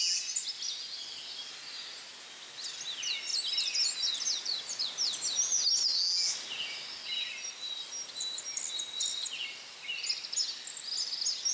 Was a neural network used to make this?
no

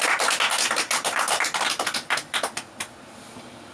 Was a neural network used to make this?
no